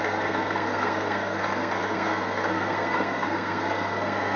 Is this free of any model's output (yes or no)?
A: no